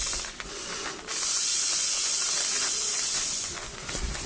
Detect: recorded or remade remade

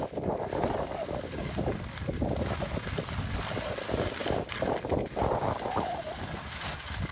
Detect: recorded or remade recorded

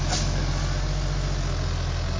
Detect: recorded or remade recorded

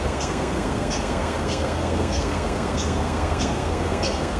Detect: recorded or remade remade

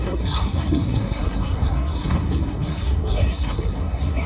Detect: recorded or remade remade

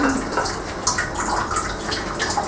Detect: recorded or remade recorded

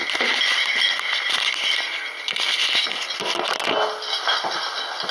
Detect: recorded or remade recorded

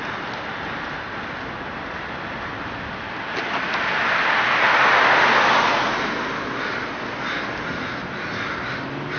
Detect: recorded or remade recorded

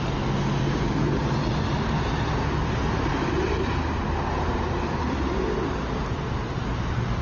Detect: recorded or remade recorded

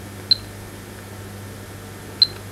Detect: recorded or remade recorded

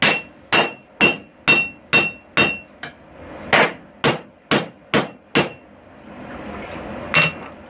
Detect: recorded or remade recorded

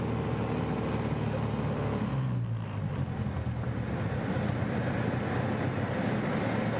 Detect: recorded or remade recorded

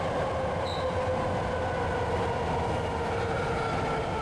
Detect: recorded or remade recorded